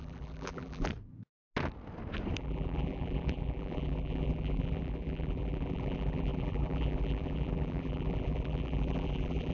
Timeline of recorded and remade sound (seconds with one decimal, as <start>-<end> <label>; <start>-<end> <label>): 0.0-0.9 remade; 0.9-2.4 recorded; 2.4-9.5 remade